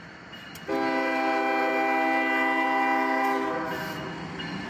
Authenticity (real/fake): real